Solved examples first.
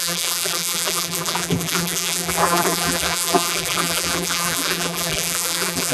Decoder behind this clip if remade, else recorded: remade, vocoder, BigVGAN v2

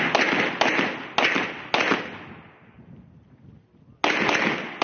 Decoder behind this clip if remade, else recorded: recorded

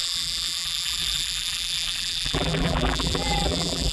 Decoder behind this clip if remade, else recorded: remade, vocoder, BigVGAN v2